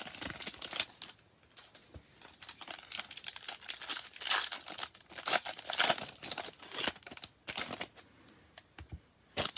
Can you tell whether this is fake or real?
real